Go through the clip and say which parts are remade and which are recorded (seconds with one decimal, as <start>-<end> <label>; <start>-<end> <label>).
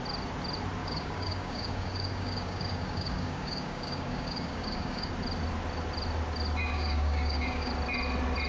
0.0-0.8 recorded; 0.8-5.1 remade; 5.1-6.6 recorded; 6.6-7.7 remade; 7.7-8.5 recorded